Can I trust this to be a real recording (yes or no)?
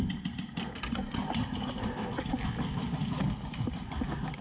yes